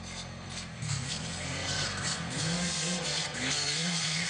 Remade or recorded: remade